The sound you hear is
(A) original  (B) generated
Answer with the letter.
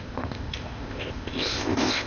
B